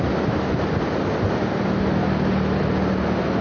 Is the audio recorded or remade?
recorded